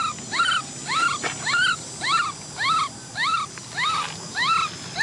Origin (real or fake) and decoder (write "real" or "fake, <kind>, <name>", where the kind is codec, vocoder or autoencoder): real